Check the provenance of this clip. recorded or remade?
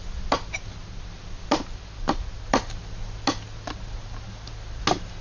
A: recorded